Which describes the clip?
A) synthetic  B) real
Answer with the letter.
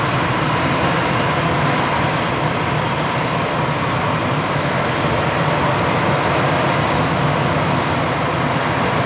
B